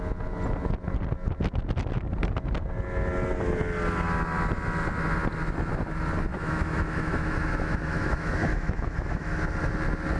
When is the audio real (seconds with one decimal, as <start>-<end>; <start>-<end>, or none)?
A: 0.0-6.3; 9.4-10.2

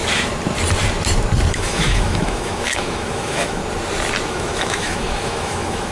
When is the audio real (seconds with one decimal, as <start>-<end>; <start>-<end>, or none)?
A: 0.0-1.5; 3.6-4.3

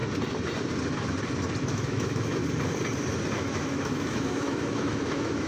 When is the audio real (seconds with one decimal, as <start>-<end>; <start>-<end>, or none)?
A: 0.0-1.6; 2.4-3.5

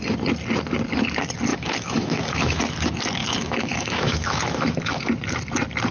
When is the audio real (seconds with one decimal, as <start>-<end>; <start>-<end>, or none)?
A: 0.0-1.5; 2.6-3.2; 5.1-5.9

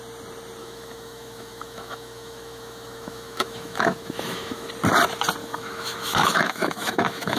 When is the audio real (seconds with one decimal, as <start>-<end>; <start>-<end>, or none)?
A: 0.0-0.6; 4.7-5.4

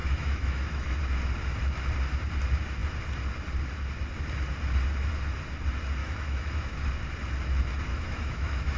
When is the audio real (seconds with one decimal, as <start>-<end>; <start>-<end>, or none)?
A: 1.0-6.0; 6.9-7.9